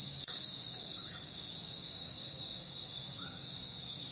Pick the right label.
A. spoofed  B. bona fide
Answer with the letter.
A